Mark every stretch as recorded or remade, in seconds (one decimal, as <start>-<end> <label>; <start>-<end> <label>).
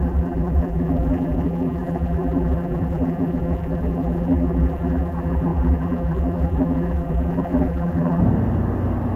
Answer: 0.0-8.2 remade; 8.2-9.2 recorded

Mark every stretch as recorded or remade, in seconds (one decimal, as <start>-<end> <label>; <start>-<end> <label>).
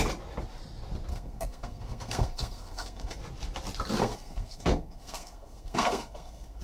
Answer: 0.0-1.1 recorded; 1.1-3.2 remade; 3.2-4.0 recorded; 4.0-6.6 remade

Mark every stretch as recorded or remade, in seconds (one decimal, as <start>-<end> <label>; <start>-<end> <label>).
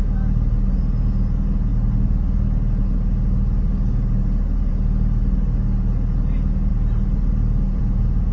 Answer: 0.0-8.3 recorded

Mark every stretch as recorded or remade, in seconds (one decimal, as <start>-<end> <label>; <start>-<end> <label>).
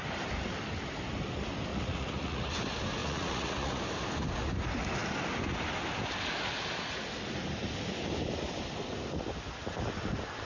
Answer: 0.0-1.7 recorded; 1.7-2.5 remade; 2.5-3.0 recorded; 3.0-3.8 remade; 3.8-10.4 recorded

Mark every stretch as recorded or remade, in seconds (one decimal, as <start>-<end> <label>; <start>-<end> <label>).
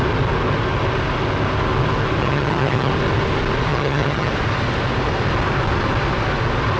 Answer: 0.0-2.2 recorded; 2.2-2.9 remade; 2.9-3.7 recorded; 3.7-4.3 remade; 4.3-6.8 recorded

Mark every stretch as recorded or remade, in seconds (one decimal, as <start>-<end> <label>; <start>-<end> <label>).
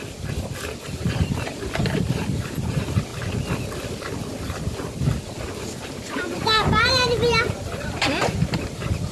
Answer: 0.0-0.8 recorded; 0.8-3.1 remade; 3.1-6.0 recorded; 6.0-9.1 remade